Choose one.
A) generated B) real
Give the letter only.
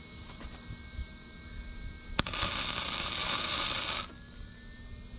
B